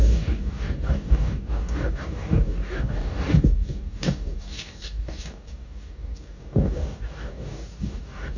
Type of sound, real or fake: fake